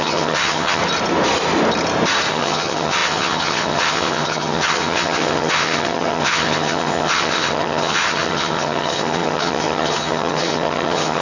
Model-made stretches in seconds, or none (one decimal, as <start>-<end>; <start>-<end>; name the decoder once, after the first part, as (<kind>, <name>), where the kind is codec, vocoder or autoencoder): 0.0-0.8 (vocoder, HiFi-GAN); 2.3-11.2